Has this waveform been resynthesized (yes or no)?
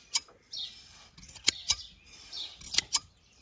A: yes